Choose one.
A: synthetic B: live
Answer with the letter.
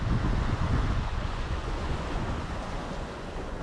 A